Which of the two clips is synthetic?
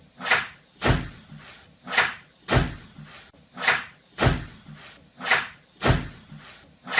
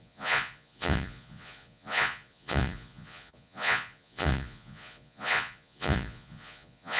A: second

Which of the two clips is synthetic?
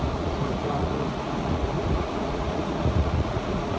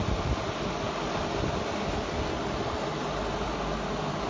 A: first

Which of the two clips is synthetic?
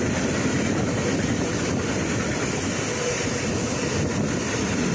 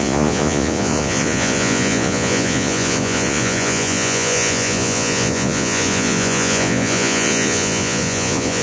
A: second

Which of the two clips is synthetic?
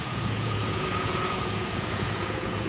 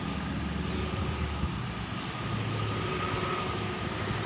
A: first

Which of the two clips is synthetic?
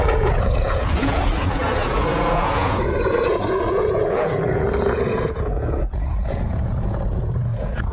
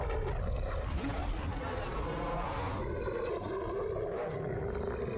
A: first